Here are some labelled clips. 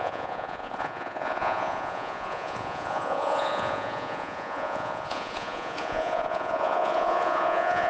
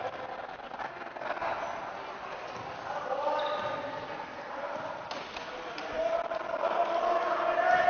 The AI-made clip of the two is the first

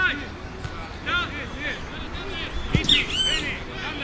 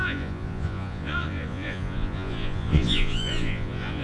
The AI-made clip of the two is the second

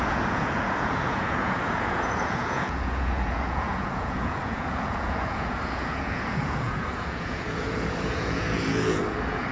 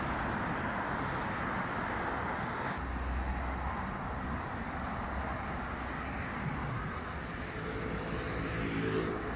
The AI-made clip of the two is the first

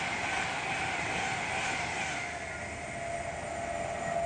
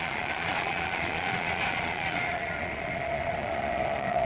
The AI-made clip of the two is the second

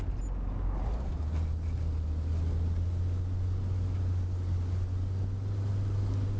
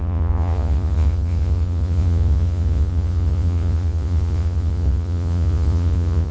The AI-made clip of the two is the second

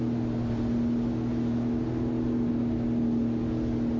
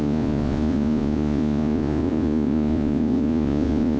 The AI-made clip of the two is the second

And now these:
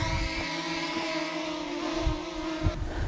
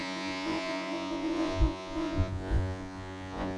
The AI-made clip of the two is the second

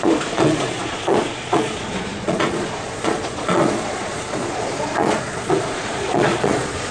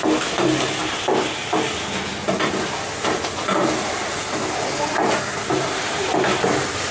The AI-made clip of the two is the first